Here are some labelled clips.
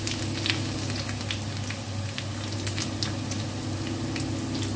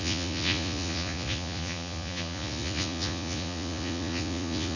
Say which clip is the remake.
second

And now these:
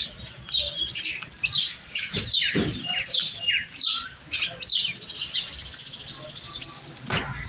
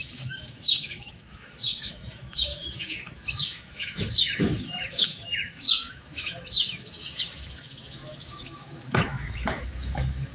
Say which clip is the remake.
second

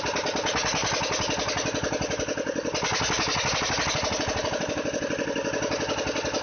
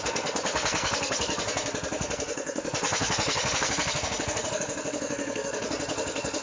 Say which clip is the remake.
second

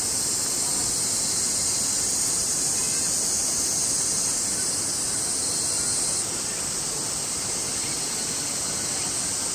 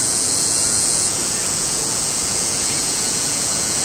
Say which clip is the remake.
second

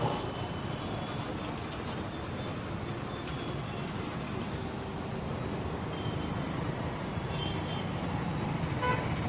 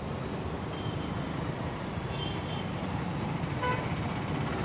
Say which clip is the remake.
second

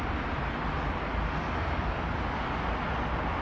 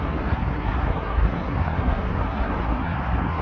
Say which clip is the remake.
second